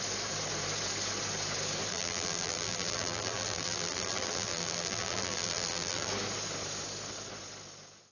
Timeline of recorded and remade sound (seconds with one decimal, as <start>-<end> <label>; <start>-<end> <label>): 0.0-1.9 recorded; 1.9-6.1 remade; 6.1-8.1 recorded